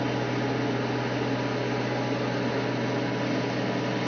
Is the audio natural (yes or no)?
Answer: yes